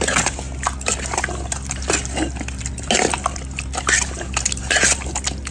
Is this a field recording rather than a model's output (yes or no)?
yes